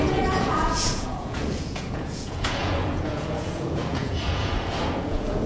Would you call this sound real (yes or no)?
no